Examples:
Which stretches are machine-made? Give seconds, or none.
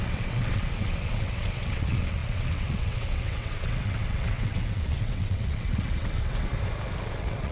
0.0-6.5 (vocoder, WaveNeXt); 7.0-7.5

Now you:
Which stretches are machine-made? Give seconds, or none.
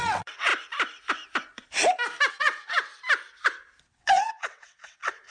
0.0-0.5 (vocoder, WaveNeXt); 2.3-2.9; 3.8-5.3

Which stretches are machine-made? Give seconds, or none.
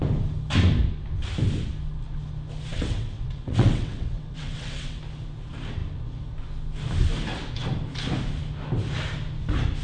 2.7-5.0 (vocoder, WaveNeXt)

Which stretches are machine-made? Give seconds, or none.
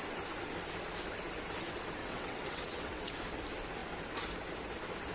2.0-3.1 (vocoder, WaveNeXt)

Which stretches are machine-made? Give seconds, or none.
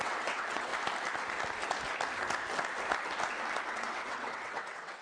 0.0-0.7 (vocoder, WaveNeXt); 3.7-5.0